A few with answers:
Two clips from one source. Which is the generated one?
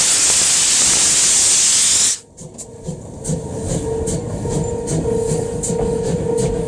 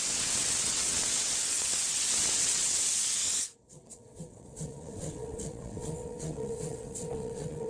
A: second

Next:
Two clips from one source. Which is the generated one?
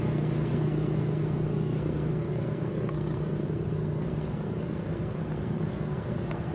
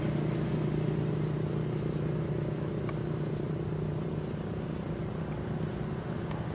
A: first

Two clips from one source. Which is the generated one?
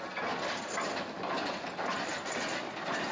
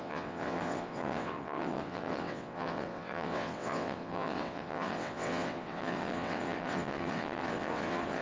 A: second